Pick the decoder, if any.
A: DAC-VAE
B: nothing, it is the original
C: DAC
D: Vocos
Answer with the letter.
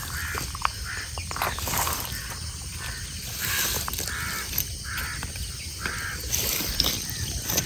B